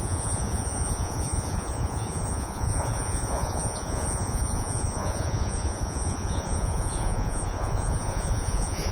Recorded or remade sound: remade